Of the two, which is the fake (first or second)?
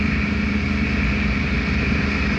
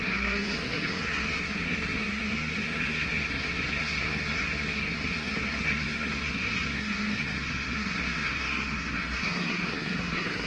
second